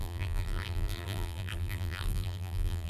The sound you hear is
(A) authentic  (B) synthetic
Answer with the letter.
B